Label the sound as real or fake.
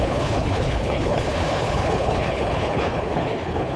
fake